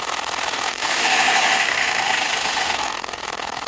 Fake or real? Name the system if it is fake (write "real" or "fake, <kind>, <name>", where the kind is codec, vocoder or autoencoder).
fake, autoencoder, DAC-VAE